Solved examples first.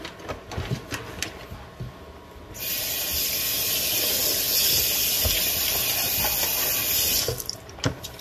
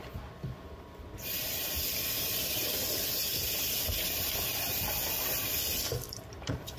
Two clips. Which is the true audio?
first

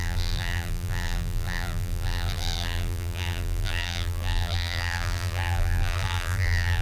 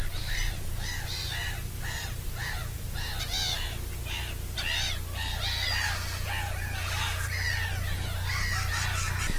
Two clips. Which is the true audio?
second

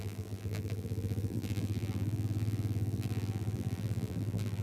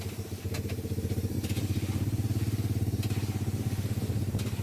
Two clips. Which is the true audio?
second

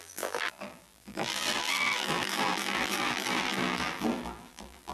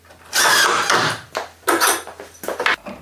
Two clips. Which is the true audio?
second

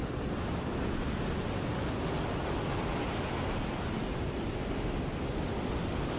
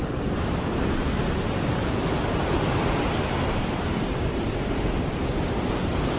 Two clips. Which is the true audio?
first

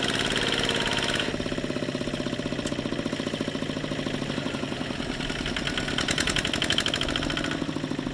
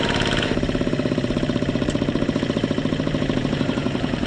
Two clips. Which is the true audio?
first